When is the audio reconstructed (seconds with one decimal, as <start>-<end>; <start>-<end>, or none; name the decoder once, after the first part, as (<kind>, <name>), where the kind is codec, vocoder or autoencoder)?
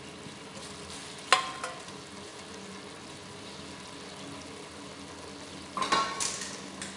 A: none